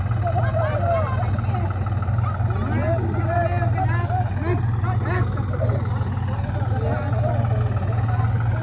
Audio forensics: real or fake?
real